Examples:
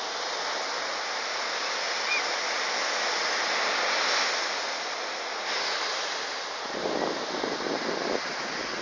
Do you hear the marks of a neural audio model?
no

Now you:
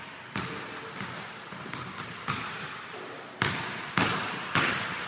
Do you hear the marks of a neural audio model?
no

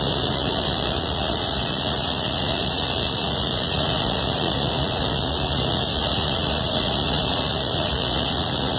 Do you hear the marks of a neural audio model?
yes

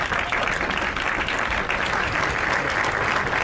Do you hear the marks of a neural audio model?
no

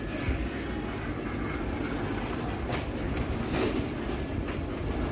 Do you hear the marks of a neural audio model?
no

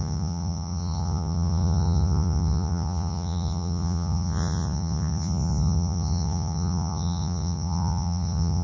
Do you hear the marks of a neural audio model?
yes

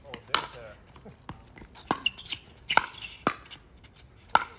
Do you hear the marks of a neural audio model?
no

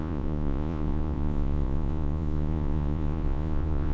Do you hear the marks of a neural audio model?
yes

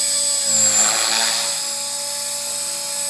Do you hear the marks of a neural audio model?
no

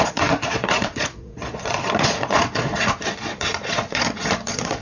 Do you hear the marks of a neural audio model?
yes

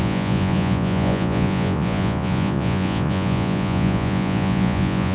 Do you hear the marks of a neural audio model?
yes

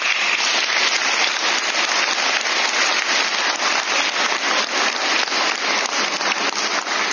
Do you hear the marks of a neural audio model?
no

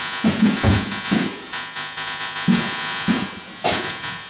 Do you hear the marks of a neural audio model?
yes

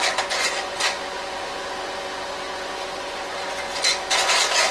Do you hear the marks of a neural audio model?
yes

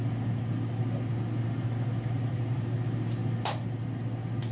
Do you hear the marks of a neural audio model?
no